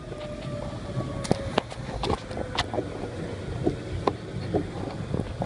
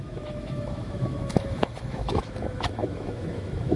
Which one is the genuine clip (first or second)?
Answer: first